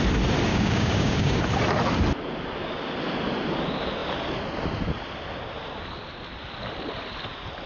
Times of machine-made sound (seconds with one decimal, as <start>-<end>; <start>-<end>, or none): 0.5-1.4